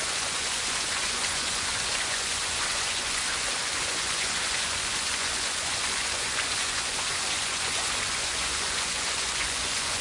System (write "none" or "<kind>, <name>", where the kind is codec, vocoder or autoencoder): vocoder, Vocos